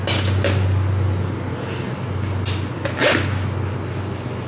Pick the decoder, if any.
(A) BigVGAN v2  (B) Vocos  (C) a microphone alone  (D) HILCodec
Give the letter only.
C